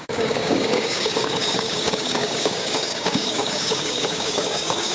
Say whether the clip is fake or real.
fake